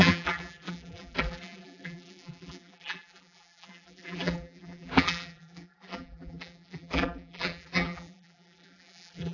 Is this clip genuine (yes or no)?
no